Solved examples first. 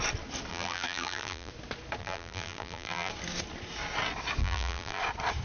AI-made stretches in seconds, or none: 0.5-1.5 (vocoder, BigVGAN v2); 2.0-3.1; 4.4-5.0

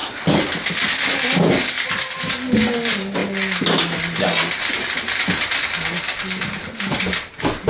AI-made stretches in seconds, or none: none

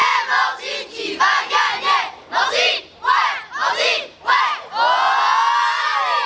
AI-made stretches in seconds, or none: none

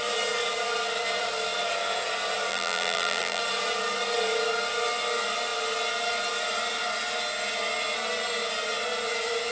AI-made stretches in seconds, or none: 2.5-3.4 (vocoder, BigVGAN v2)

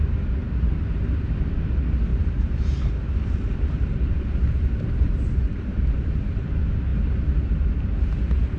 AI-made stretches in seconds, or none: 0.4-1.0 (vocoder, BigVGAN v2); 2.1-6.4

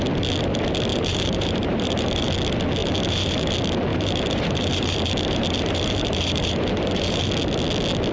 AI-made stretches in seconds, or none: 0.9-2.3 (vocoder, BigVGAN v2); 2.8-3.5; 3.9-7.3

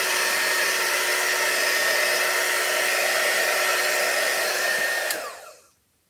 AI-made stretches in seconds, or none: 0.0-1.1 (vocoder, BigVGAN v2); 3.3-3.7; 4.4-6.1

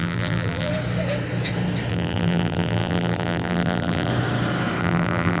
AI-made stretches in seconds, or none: 0.0-0.7 (vocoder, BigVGAN v2); 1.9-4.1; 4.8-5.4